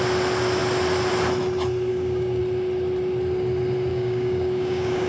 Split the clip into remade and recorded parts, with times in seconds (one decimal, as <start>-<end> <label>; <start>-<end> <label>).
0.0-1.9 recorded; 1.9-2.4 remade; 2.4-3.9 recorded; 3.9-5.1 remade